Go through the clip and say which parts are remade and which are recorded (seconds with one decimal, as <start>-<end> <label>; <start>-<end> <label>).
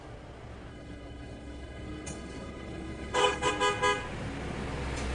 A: 0.0-0.7 recorded; 0.7-3.5 remade; 3.5-5.1 recorded